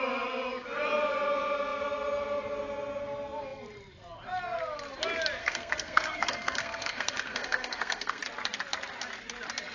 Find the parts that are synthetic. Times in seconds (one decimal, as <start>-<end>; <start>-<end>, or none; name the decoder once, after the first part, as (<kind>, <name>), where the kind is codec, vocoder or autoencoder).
5.4-8.2 (codec, SNAC)